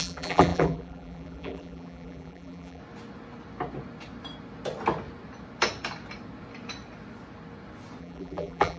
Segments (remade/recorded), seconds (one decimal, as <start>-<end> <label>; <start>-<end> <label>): 0.0-2.8 remade; 2.8-8.0 recorded; 8.0-8.8 remade